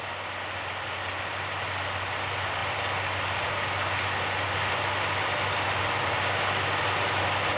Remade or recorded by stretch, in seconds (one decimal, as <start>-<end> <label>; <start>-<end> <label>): 0.0-7.6 recorded